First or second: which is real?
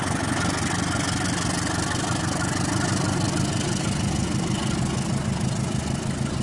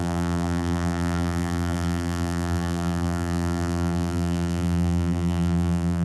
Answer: first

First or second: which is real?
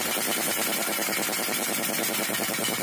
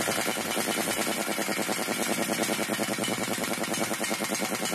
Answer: second